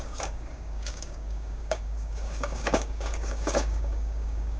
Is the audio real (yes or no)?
no